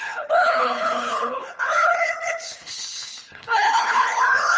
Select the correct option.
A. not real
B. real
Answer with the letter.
A